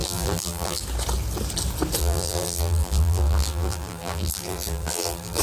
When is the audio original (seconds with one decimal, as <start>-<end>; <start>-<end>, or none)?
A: 0.8-2.0